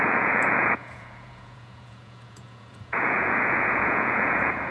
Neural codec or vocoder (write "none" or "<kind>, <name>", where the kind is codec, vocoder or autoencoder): vocoder, Vocos